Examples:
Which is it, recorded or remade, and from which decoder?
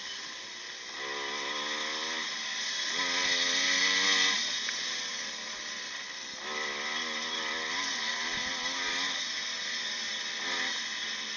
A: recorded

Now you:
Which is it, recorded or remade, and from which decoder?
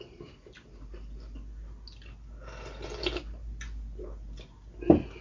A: recorded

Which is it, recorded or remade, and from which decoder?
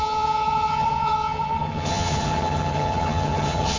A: remade, vocoder, HiFi-GAN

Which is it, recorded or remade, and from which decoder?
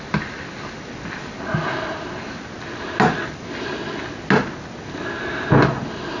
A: recorded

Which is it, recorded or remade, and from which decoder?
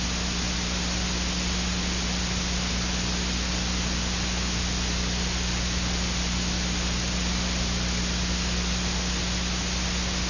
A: recorded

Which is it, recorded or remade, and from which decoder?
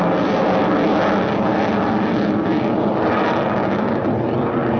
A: recorded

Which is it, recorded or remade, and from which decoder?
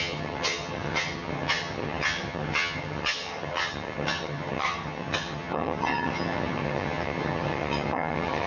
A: remade, vocoder, HiFi-GAN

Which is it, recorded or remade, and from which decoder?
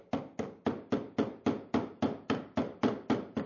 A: recorded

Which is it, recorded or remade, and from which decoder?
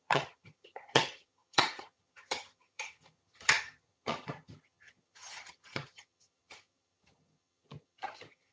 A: remade, vocoder, HiFi-GAN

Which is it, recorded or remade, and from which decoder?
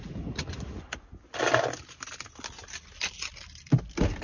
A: recorded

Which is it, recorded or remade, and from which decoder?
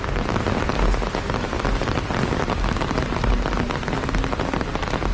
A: recorded